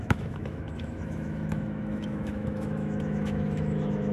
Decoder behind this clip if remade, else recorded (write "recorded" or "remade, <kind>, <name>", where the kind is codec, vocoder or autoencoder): remade, autoencoder, DAC-VAE